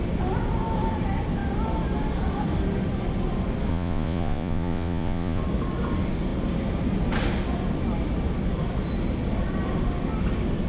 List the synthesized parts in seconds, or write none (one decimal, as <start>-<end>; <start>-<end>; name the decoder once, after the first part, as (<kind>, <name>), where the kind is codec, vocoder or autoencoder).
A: 3.7-5.4 (vocoder, Vocos)